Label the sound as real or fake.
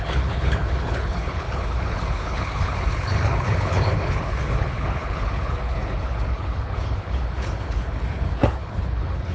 fake